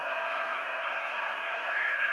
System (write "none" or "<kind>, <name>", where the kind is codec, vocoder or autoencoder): codec, SNAC